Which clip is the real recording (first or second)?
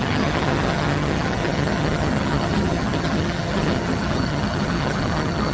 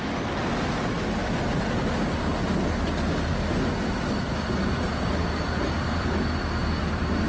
second